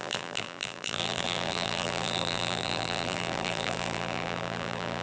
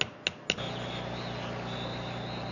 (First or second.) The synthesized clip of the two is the first